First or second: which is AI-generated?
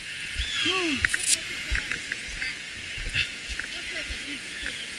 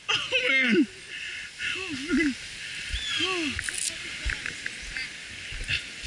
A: first